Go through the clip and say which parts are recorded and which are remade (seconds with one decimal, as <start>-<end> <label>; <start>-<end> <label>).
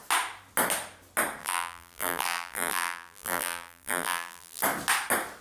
0.0-1.4 recorded; 1.4-4.6 remade; 4.6-5.4 recorded